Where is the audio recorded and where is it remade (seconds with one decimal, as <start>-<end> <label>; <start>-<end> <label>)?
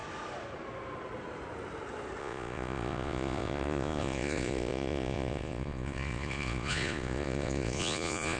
0.0-2.2 recorded; 2.2-8.4 remade